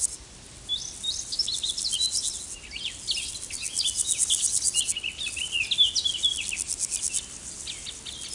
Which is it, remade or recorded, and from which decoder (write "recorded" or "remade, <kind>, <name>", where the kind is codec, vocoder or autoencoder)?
recorded